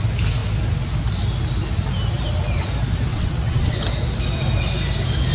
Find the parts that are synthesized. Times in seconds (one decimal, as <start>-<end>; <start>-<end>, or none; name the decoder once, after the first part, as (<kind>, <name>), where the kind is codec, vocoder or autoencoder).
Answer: 3.1-3.8 (vocoder, WaveNeXt)